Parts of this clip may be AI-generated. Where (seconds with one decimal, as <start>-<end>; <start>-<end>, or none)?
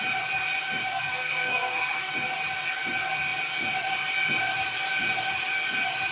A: 0.9-2.1